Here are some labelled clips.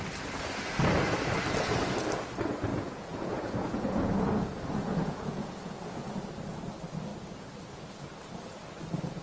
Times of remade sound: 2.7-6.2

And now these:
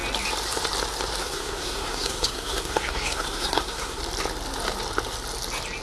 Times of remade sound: 1.2-4.0

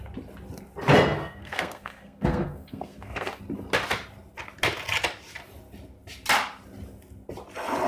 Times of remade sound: 1.2-3.4

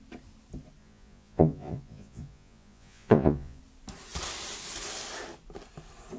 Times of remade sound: 0.8-3.6

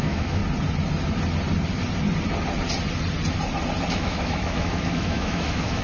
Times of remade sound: 0.0-0.4; 3.9-5.8